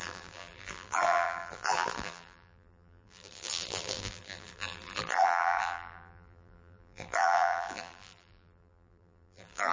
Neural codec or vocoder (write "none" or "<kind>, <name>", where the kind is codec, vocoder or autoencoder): vocoder, BigVGAN v2